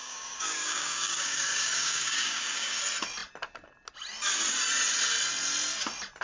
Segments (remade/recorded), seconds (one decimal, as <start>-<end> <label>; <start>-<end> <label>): 0.0-2.8 remade; 2.8-6.2 recorded